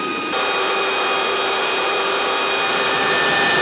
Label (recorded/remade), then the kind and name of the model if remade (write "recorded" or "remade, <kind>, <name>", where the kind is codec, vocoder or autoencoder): remade, vocoder, BigVGAN v2